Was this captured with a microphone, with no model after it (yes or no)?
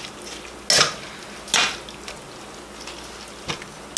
yes